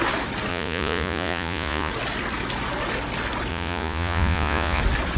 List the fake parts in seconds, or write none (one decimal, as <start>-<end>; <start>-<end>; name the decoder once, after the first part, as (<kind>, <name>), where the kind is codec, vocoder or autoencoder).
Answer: 0.5-1.9 (vocoder, Vocos); 3.5-4.8